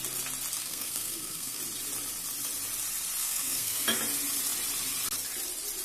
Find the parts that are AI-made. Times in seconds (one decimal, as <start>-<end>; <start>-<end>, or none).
0.6-1.6; 3.2-4.0